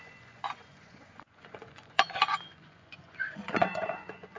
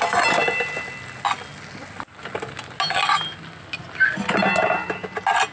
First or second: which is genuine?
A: second